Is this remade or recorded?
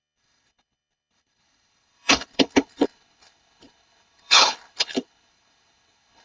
remade